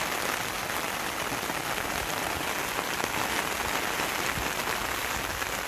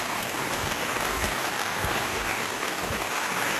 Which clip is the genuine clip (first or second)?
first